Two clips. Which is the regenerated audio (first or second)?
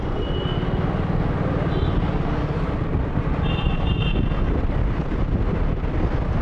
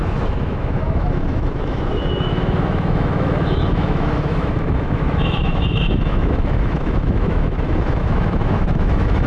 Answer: second